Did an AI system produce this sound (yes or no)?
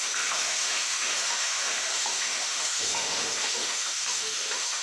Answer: yes